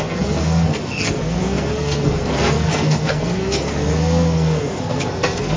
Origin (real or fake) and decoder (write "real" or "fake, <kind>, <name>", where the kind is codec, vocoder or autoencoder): fake, codec, SNAC